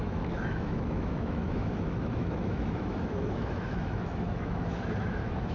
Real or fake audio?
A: fake